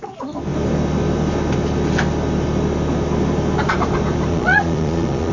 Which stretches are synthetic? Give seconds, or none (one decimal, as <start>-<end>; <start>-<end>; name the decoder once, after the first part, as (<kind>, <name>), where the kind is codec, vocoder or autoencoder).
4.3-5.3 (vocoder, Vocos)